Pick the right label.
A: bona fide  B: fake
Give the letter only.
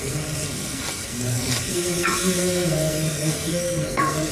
B